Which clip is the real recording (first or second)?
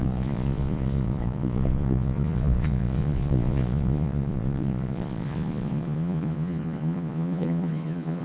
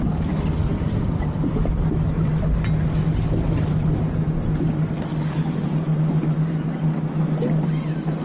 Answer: second